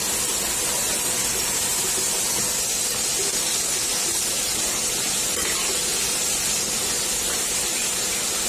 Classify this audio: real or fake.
real